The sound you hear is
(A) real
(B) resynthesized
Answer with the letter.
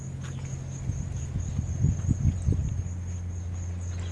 A